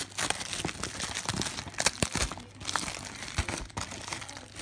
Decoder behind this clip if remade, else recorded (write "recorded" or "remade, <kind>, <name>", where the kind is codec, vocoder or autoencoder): recorded